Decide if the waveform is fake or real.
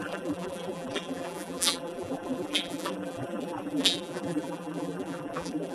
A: fake